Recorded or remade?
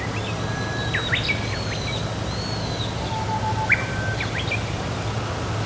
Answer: recorded